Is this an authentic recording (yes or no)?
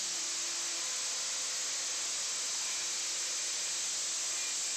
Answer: yes